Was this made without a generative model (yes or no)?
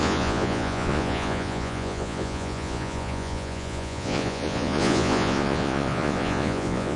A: no